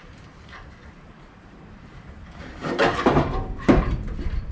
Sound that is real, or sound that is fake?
fake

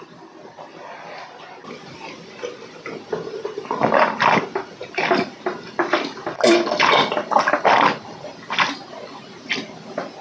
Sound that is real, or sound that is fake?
real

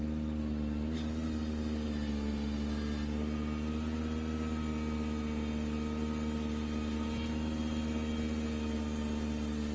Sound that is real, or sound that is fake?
real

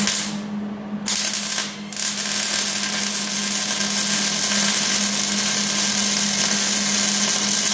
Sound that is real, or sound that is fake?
real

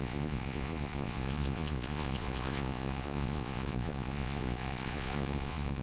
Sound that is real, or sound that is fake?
fake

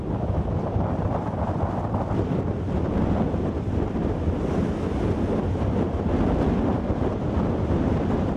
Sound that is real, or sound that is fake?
real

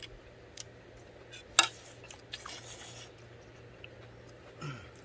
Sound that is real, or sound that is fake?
real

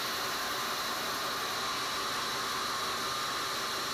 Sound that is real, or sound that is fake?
real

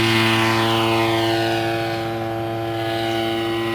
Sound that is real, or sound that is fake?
real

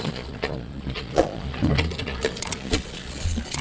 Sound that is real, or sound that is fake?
fake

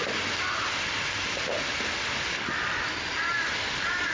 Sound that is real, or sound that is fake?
real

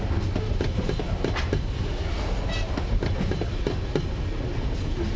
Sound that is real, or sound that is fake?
real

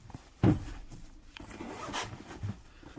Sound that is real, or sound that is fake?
fake